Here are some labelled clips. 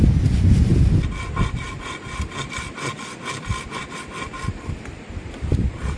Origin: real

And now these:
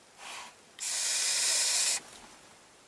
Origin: fake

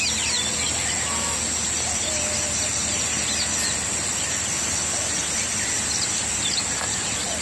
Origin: real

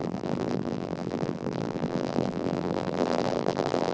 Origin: fake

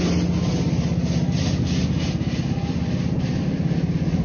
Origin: real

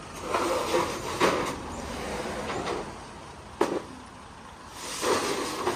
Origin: real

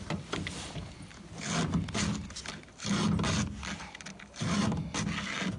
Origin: real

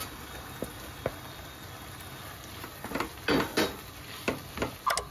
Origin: real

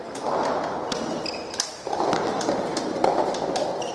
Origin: real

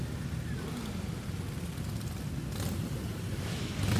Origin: real